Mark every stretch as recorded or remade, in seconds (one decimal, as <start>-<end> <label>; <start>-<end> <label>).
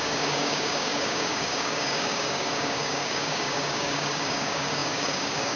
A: 0.0-5.6 remade